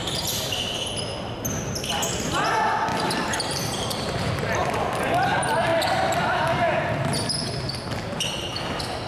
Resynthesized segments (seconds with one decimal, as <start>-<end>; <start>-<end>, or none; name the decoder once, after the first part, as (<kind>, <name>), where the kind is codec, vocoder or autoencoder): 0.0-0.9 (vocoder, BigVGAN v2); 2.9-4.3